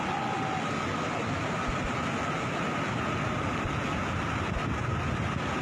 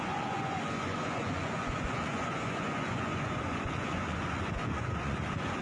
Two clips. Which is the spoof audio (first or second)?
second